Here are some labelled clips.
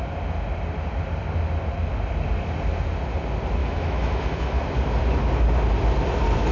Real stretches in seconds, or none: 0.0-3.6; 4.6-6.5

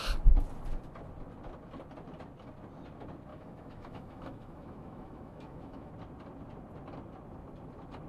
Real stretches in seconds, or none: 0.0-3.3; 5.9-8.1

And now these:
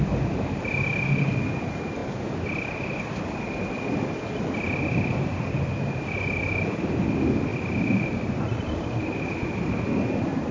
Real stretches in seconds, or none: 0.0-7.5; 9.7-10.5

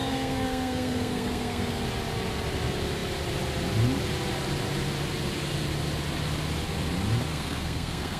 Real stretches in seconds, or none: 1.8-7.3